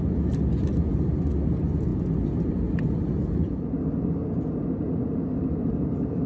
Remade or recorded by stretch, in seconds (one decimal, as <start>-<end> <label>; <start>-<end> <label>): 0.0-6.3 recorded